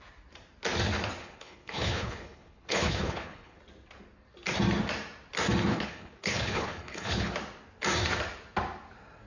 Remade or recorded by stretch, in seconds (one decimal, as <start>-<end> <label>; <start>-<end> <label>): 0.0-1.2 recorded; 1.2-3.6 remade; 3.6-5.7 recorded; 5.7-7.3 remade; 7.3-9.3 recorded